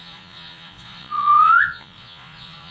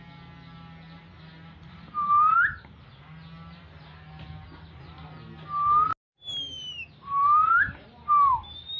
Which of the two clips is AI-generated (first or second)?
first